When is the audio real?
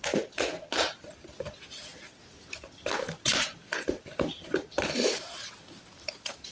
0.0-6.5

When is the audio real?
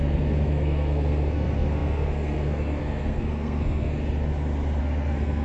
3.9-4.8